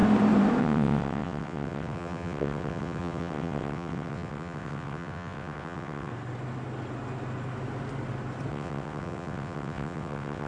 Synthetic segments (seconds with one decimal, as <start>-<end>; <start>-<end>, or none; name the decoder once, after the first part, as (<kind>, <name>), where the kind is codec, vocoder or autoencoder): 0.6-6.1 (vocoder, WaveNeXt); 8.5-10.5